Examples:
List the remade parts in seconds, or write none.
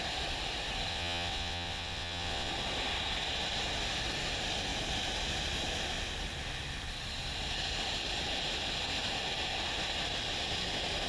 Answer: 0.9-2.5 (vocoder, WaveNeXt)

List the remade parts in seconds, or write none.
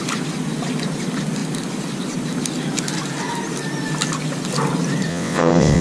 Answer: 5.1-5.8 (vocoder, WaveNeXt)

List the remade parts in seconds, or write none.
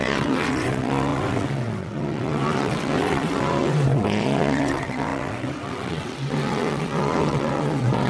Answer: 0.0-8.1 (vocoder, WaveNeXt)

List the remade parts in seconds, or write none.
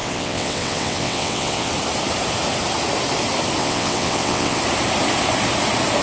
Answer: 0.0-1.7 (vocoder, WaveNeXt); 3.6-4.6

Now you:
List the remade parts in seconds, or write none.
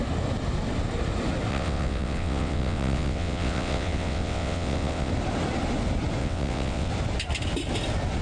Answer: 1.5-5.1 (vocoder, WaveNeXt); 6.2-6.9